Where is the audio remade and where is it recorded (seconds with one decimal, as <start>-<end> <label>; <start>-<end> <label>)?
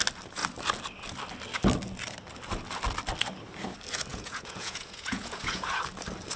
0.0-4.1 recorded; 4.1-5.8 remade; 5.8-6.4 recorded